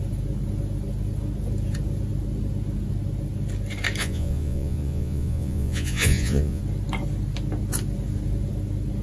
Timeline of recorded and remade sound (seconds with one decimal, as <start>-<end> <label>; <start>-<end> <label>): 0.0-4.0 recorded; 4.0-6.6 remade; 6.6-9.0 recorded